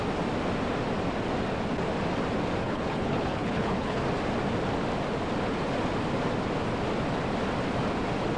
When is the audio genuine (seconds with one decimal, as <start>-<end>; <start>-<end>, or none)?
0.0-2.6; 4.0-8.4